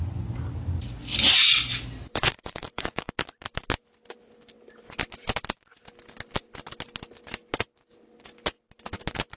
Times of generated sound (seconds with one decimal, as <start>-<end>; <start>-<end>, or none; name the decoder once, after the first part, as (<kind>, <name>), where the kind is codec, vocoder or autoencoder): 2.1-3.1 (vocoder, Vocos)